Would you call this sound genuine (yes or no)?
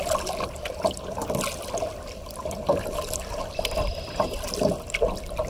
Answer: yes